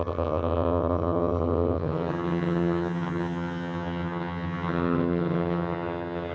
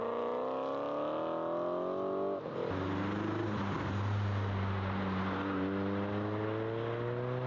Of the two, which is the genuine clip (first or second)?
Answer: second